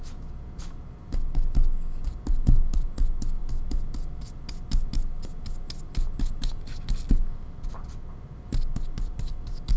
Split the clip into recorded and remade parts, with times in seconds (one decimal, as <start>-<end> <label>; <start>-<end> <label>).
0.0-9.8 recorded